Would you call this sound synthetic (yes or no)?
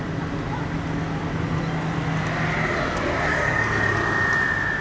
no